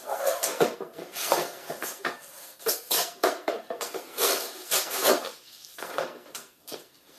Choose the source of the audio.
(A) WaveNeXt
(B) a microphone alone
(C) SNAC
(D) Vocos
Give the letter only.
C